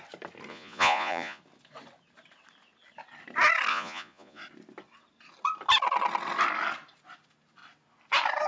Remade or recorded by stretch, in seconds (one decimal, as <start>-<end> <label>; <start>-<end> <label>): 0.0-0.5 recorded; 0.5-1.4 remade; 1.4-3.7 recorded; 3.7-4.4 remade; 4.4-8.5 recorded